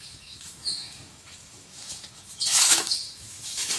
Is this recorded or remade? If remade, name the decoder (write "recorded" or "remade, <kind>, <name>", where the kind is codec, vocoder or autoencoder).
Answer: remade, autoencoder, DAC-VAE